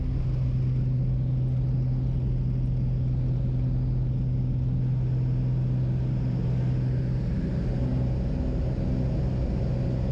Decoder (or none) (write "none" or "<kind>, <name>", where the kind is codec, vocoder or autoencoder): none